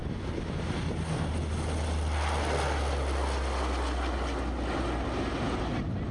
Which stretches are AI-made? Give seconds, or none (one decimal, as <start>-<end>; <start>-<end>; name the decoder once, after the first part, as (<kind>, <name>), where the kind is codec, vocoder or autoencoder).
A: none